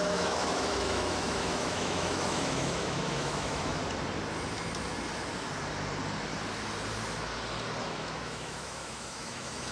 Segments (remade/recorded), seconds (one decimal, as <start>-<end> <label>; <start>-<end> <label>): 0.0-3.8 remade; 3.8-7.8 recorded; 7.8-9.7 remade